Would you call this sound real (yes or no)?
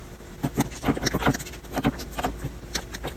yes